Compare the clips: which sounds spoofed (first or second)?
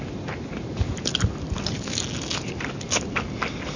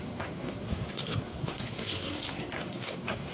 second